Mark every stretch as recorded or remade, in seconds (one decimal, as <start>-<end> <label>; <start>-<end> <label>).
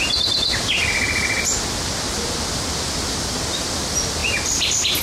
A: 0.0-5.0 recorded